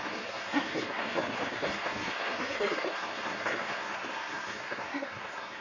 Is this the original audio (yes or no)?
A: no